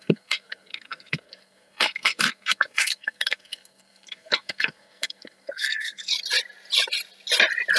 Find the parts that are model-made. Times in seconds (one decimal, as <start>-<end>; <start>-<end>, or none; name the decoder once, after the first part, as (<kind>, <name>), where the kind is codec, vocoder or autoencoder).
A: 0.0-6.1 (codec, SNAC)